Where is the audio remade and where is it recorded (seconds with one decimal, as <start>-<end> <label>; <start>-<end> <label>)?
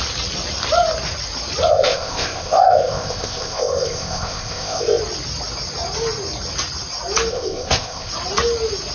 0.0-1.7 recorded; 1.7-5.0 remade; 5.0-7.3 recorded; 7.3-8.1 remade; 8.1-8.9 recorded